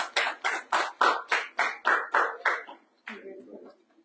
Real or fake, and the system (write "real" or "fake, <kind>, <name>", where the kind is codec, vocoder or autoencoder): real